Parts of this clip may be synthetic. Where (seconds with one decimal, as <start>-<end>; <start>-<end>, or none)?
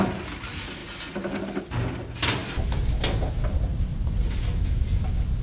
none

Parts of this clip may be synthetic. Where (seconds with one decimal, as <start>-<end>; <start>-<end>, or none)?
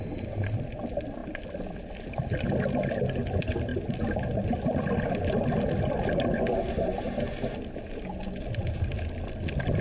none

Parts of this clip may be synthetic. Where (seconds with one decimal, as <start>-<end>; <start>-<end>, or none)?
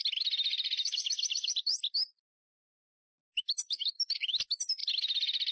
0.5-1.7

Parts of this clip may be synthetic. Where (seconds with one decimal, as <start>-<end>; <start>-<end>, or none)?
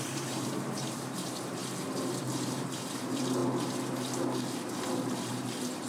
0.0-1.6; 2.2-3.4; 5.3-5.9